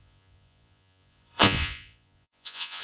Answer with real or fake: fake